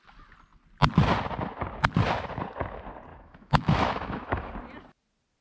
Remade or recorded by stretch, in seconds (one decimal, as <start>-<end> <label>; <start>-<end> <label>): 0.0-3.1 recorded; 3.1-4.5 remade; 4.5-5.4 recorded